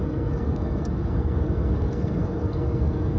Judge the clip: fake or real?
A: fake